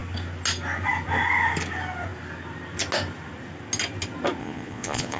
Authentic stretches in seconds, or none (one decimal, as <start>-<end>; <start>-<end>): 0.0-4.4

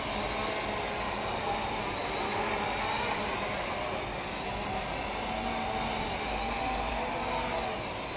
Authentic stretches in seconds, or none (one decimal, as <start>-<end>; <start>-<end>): 0.0-8.2

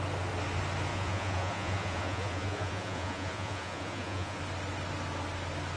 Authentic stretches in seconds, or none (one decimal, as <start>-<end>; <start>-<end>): 0.0-0.9; 4.4-5.8

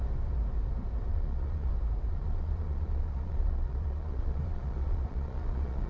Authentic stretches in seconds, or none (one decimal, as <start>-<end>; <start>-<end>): 0.0-1.1; 1.7-2.1

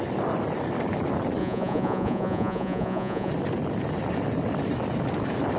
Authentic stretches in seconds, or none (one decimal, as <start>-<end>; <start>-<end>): 0.0-1.4; 3.3-5.6

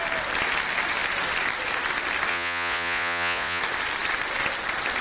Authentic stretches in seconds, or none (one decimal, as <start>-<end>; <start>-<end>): 0.0-2.3; 3.6-5.0